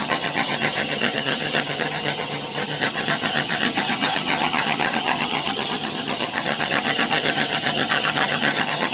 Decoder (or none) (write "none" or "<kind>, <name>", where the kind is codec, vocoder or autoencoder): vocoder, HiFi-GAN